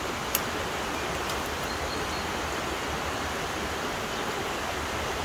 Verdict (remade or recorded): recorded